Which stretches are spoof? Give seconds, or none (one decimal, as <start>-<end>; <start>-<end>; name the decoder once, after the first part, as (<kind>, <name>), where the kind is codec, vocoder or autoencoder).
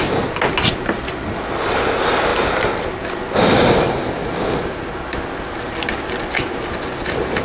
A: none